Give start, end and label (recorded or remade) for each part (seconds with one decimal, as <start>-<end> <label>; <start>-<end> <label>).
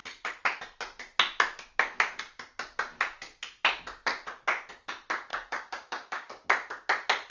0.0-5.3 recorded; 5.3-6.3 remade; 6.3-7.3 recorded